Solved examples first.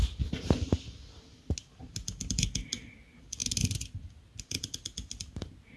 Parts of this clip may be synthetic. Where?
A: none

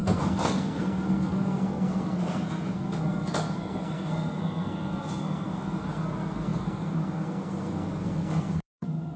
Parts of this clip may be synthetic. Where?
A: 0.0-9.2 (codec, SNAC)